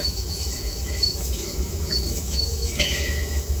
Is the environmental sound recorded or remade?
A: remade